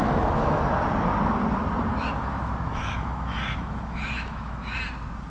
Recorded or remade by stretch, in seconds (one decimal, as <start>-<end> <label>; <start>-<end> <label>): 0.0-0.6 remade; 0.6-1.9 recorded; 1.9-4.8 remade; 4.8-5.3 recorded